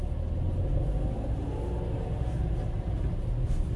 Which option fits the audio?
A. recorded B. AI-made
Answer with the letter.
A